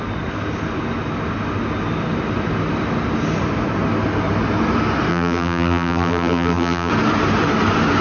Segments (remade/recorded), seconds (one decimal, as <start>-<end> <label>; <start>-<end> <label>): 0.0-5.1 recorded; 5.1-6.9 remade; 6.9-8.0 recorded